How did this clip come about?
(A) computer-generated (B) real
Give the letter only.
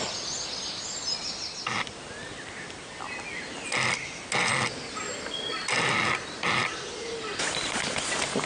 B